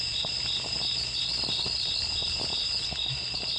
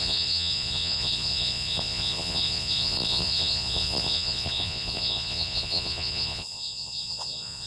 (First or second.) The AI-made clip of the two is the second